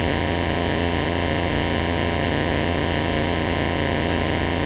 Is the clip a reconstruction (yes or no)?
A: yes